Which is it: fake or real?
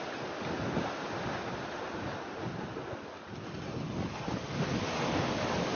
real